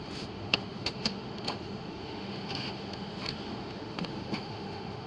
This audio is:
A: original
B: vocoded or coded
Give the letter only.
B